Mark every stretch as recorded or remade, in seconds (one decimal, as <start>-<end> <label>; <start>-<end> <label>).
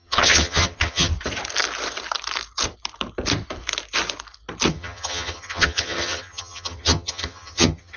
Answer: 0.0-1.1 remade; 1.1-4.7 recorded; 4.7-8.0 remade